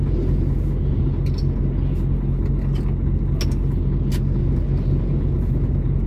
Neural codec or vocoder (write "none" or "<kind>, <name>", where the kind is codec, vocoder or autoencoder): none